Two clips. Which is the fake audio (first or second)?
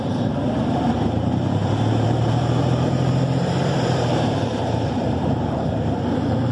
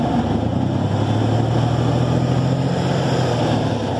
first